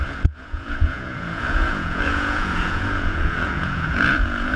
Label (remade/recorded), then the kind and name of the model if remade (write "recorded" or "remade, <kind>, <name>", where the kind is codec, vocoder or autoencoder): remade, vocoder, Vocos